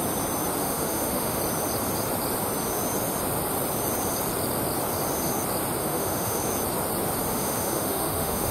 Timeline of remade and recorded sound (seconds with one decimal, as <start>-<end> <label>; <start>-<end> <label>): 0.0-0.6 recorded; 0.6-1.4 remade; 1.4-5.8 recorded; 5.8-6.4 remade; 6.4-7.3 recorded; 7.3-8.5 remade